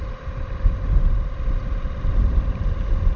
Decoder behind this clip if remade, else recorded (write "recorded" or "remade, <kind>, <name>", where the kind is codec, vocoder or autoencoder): recorded